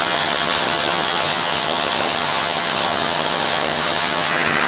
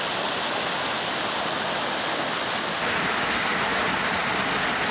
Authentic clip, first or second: second